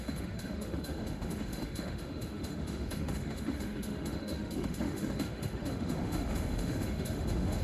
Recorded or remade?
remade